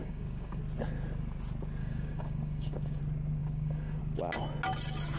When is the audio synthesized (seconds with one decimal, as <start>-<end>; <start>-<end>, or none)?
0.0-0.6; 1.8-3.0; 3.4-4.0